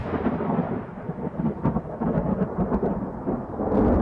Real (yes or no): yes